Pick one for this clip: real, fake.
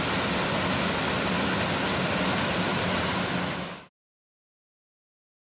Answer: real